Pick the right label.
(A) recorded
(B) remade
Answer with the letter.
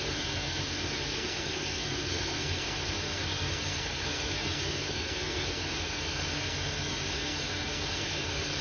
B